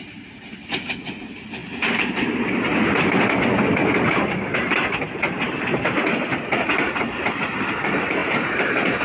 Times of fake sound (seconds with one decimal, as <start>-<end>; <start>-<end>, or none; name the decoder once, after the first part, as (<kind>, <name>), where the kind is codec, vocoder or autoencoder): none